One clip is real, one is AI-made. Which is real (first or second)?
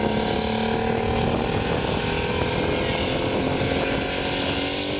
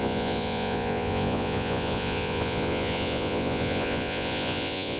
first